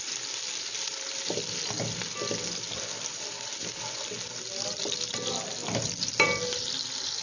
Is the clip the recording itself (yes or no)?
yes